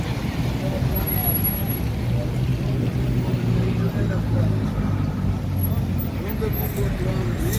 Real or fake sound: real